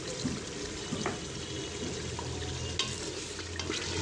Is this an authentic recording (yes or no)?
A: yes